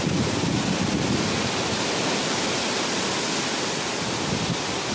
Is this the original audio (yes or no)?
yes